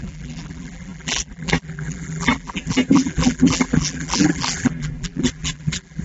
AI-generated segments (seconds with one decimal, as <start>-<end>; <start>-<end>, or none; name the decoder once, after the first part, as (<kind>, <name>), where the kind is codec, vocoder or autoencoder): 0.0-6.0 (vocoder, BigVGAN v2)